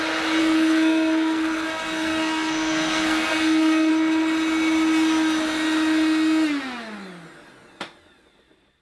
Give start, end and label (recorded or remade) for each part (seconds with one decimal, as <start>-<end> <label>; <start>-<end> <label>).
0.0-0.4 recorded; 0.4-3.9 remade; 3.9-8.8 recorded